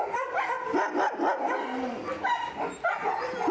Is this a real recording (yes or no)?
yes